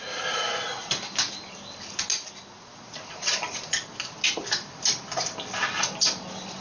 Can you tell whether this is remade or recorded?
recorded